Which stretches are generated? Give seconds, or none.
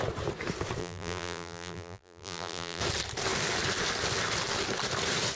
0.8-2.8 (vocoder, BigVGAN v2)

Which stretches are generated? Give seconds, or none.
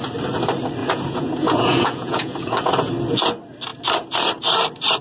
0.8-2.9 (vocoder, Vocos)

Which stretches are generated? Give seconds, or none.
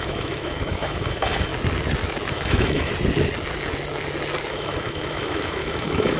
0.0-1.5 (autoencoder, DAC-VAE); 2.3-2.9; 4.5-6.2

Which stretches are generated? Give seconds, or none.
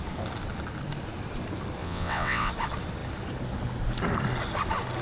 1.8-2.5 (vocoder, WaveNeXt)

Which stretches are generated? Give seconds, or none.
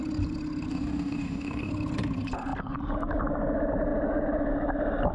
0.7-1.7 (codec, DAC)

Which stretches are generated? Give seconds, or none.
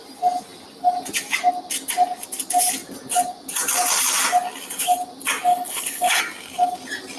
5.5-6.2 (codec, HILCodec)